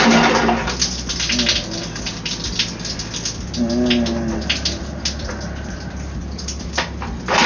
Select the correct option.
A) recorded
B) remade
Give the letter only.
A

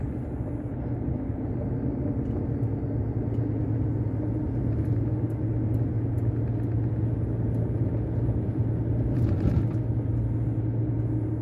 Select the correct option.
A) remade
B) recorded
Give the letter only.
B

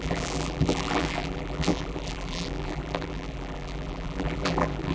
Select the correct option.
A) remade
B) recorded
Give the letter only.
A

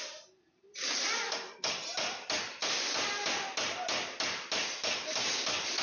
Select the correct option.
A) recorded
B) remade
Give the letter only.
A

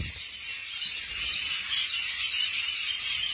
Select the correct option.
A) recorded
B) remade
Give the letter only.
A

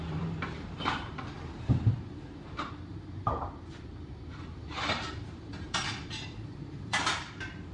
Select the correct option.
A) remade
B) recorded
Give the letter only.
A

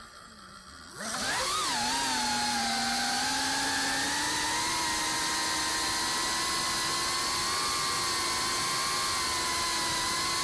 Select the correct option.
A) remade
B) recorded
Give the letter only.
B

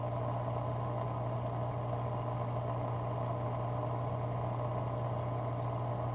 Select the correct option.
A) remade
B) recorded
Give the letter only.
B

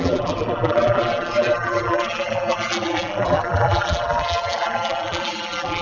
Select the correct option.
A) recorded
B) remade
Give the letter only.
B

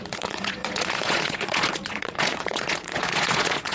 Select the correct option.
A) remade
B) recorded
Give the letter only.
A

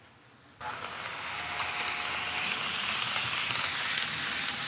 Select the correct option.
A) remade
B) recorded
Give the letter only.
B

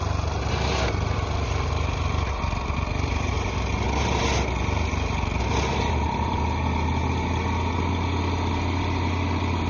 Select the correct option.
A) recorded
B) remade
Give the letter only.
A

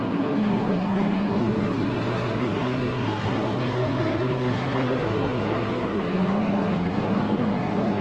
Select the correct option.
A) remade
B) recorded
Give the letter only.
A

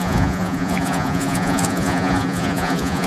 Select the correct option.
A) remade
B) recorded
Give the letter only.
A